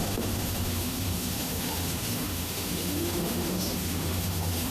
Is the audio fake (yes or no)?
yes